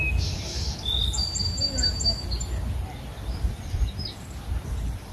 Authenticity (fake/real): real